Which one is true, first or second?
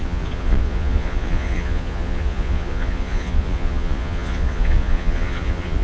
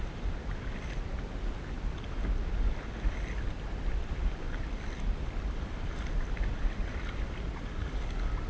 second